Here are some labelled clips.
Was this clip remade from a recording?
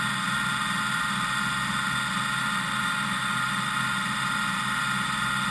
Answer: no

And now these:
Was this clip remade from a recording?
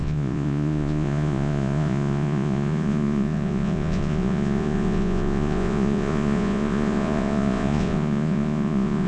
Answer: yes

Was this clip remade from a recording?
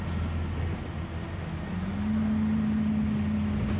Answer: no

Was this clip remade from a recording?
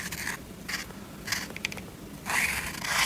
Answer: no